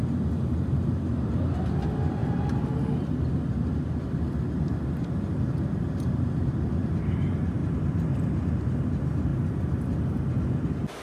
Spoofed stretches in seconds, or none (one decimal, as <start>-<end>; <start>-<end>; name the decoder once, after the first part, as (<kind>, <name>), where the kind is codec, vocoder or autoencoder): none